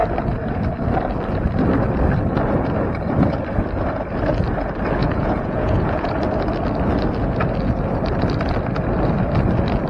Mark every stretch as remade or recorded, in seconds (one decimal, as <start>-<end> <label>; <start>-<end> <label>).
0.0-5.0 recorded; 5.0-6.1 remade; 6.1-9.9 recorded